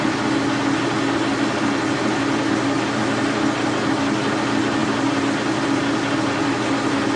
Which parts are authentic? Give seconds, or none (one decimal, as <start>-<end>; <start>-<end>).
0.0-7.2